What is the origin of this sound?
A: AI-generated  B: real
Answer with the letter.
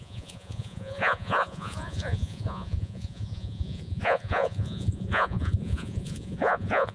A